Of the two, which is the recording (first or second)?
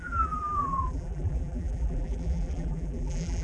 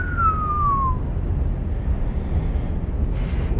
second